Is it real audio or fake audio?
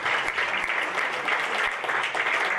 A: real